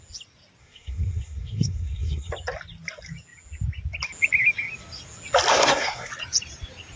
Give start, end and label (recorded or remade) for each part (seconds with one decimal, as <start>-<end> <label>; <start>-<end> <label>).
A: 0.0-0.6 recorded; 0.6-2.3 remade; 2.3-5.5 recorded; 5.5-6.1 remade; 6.1-7.0 recorded